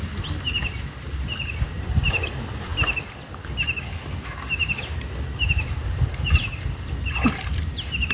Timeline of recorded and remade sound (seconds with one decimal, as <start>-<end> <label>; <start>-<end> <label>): 0.0-8.1 recorded